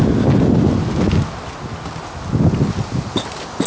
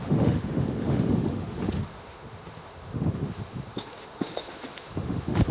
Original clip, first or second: first